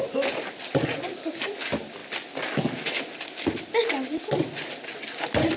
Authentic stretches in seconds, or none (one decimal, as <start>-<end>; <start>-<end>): 0.0-5.6